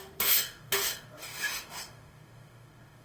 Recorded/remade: remade